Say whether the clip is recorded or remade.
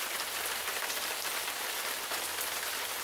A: remade